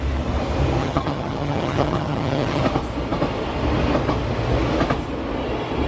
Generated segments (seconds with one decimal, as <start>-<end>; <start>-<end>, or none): 0.8-2.6